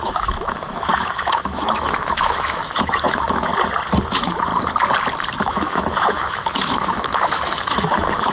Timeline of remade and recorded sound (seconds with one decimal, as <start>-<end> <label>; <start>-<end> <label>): 0.0-3.5 remade; 3.5-4.1 recorded; 4.1-4.5 remade; 4.5-5.4 recorded; 5.4-8.3 remade